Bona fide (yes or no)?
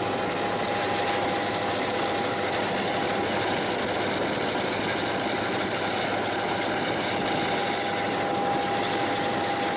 yes